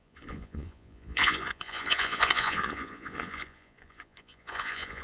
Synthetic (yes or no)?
yes